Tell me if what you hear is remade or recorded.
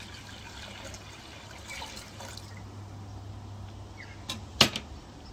recorded